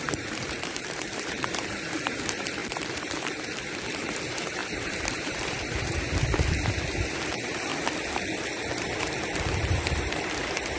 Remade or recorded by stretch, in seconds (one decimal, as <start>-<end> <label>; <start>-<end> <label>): 0.0-7.7 remade; 7.7-9.7 recorded; 9.7-10.8 remade